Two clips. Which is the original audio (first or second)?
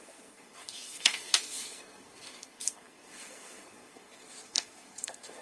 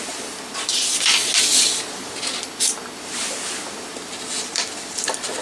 second